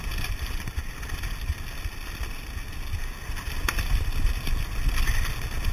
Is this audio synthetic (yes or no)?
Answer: no